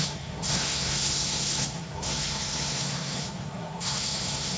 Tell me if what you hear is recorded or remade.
remade